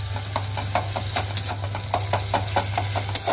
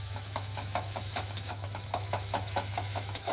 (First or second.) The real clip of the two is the first